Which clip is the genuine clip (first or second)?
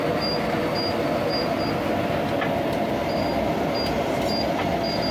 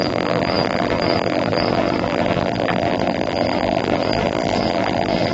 first